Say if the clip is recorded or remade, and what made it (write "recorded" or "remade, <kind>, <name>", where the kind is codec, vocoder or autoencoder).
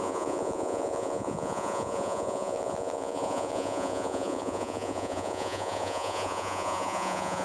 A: remade, vocoder, Vocos